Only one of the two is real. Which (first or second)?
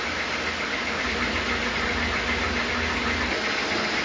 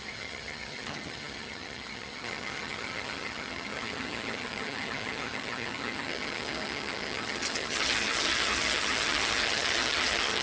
first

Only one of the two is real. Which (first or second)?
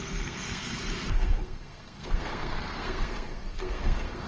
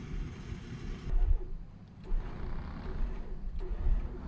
second